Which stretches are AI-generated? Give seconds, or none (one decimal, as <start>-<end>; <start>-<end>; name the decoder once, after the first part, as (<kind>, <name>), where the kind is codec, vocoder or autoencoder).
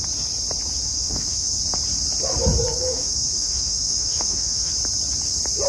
0.9-1.6 (autoencoder, DAC-VAE); 2.7-4.7